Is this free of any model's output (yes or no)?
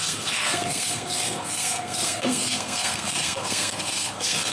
no